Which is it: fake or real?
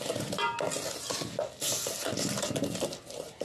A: real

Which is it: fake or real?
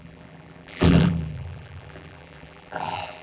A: fake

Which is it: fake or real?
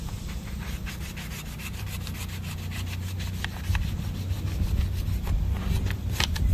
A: real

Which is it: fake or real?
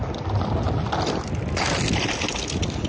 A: real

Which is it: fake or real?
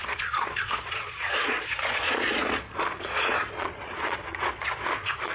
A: fake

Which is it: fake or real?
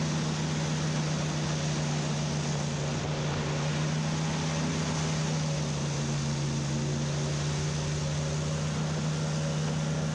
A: real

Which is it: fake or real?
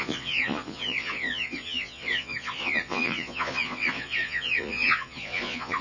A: fake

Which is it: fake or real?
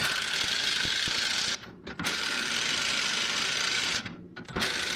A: real